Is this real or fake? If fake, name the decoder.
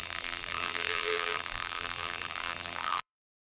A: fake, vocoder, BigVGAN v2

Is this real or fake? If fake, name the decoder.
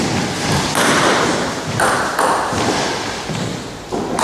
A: real